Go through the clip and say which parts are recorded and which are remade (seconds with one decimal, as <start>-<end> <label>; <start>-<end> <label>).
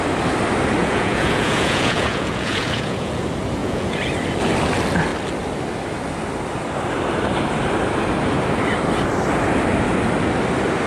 0.0-0.8 recorded; 0.8-3.2 remade; 3.2-3.6 recorded; 3.6-4.1 remade; 4.1-10.9 recorded